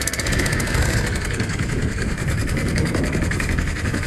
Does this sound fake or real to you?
fake